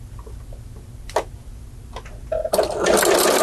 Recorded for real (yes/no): yes